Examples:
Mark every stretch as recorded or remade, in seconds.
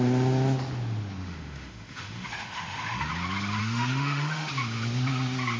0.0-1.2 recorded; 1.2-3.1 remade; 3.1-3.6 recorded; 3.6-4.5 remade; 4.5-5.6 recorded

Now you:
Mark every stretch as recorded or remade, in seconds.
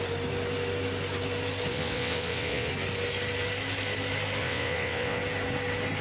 0.0-1.7 recorded; 1.7-2.7 remade; 2.7-4.4 recorded; 4.4-5.2 remade; 5.2-6.0 recorded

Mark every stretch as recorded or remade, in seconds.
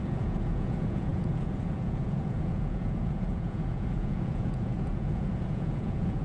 0.0-6.2 remade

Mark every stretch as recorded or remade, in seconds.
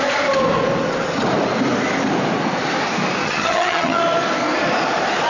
0.0-3.2 recorded; 3.2-4.0 remade; 4.0-5.3 recorded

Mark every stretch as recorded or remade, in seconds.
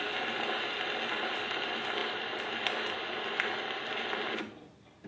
0.0-5.1 recorded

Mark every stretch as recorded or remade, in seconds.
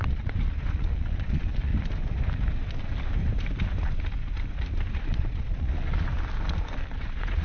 0.0-1.7 remade; 1.7-4.9 recorded; 4.9-6.1 remade; 6.1-7.0 recorded; 7.0-7.4 remade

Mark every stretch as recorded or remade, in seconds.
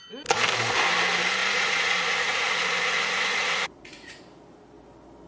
0.0-1.4 recorded; 1.4-4.2 remade; 4.2-5.3 recorded